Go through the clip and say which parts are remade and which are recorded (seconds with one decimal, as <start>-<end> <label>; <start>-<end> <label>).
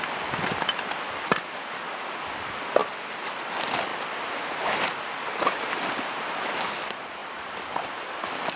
0.0-3.9 remade; 3.9-5.0 recorded; 5.0-8.6 remade